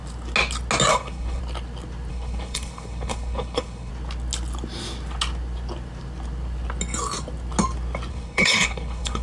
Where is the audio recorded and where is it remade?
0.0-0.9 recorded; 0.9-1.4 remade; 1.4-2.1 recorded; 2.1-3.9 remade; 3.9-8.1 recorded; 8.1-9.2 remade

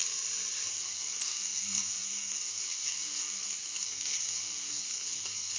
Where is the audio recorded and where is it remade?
0.0-0.7 recorded; 0.7-5.6 remade

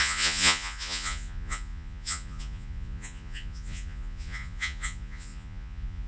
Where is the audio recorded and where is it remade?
0.0-6.1 remade